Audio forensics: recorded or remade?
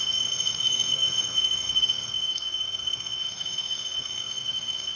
remade